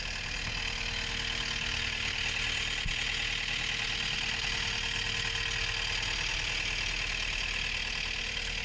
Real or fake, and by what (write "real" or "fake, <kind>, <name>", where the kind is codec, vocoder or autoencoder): real